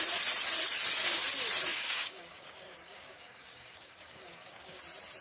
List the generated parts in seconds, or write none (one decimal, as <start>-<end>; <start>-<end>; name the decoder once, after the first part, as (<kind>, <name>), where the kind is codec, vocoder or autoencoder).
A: 1.7-4.8 (codec, DAC)